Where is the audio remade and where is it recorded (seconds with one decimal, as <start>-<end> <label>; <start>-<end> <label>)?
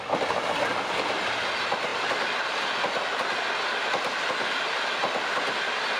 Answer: 0.0-6.0 recorded